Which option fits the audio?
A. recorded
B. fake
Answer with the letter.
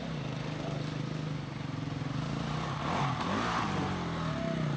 A